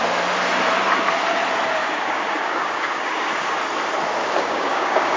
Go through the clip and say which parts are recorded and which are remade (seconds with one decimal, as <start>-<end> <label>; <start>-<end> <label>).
0.0-1.8 recorded; 1.8-3.6 remade; 3.6-4.2 recorded; 4.2-5.2 remade